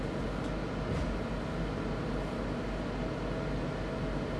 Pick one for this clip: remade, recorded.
recorded